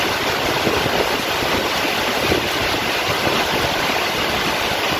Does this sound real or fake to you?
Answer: real